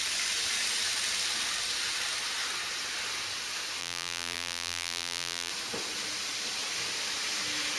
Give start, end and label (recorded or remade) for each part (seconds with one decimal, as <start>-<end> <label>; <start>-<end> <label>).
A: 0.0-3.8 recorded; 3.8-5.5 remade; 5.5-7.8 recorded